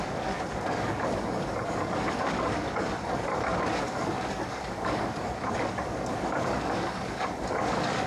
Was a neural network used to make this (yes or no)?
yes